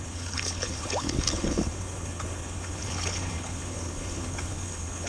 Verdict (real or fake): fake